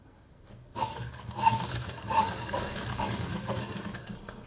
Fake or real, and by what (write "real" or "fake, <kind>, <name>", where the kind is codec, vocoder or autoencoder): fake, codec, SNAC